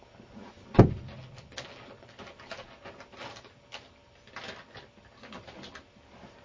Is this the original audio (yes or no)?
yes